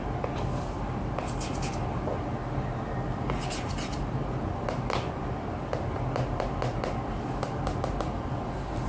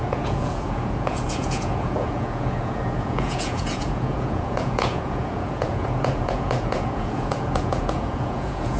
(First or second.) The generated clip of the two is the second